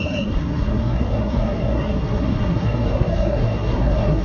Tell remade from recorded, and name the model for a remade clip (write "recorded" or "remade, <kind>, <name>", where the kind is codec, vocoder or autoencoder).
remade, codec, SNAC